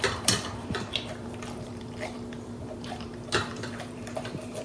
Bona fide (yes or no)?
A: no